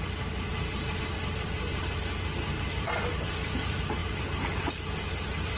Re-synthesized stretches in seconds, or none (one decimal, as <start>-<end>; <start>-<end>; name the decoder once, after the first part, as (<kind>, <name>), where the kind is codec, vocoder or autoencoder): none